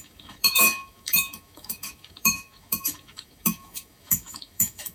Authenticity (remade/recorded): remade